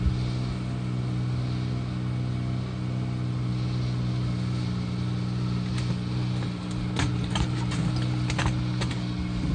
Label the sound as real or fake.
real